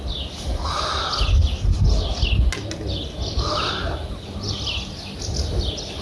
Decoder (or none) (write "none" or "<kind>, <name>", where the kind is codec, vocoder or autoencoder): none